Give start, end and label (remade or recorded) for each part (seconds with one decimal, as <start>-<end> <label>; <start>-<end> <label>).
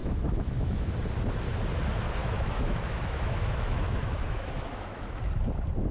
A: 0.0-0.9 remade; 0.9-2.2 recorded; 2.2-5.2 remade; 5.2-5.9 recorded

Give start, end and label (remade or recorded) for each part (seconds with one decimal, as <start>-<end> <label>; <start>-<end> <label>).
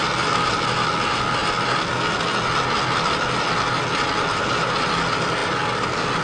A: 0.0-6.2 recorded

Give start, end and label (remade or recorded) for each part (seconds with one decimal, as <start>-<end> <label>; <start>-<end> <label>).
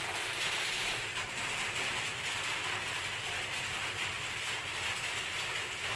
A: 0.0-1.1 recorded; 1.1-4.7 remade; 4.7-6.0 recorded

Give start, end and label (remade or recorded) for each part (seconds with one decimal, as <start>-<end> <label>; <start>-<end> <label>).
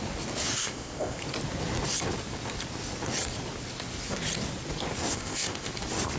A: 0.0-0.6 recorded; 0.6-1.2 remade; 1.2-5.1 recorded; 5.1-5.7 remade; 5.7-6.2 recorded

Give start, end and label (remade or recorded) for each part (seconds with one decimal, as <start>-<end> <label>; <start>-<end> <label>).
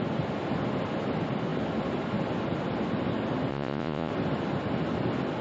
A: 0.0-3.5 recorded; 3.5-4.1 remade; 4.1-5.4 recorded